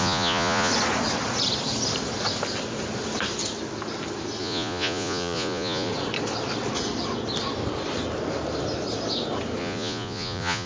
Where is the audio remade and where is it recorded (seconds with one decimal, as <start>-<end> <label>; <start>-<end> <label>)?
0.0-0.7 remade; 0.7-4.4 recorded; 4.4-5.9 remade; 5.9-9.6 recorded; 9.6-10.7 remade